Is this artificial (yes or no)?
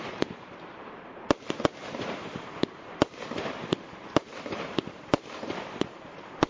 yes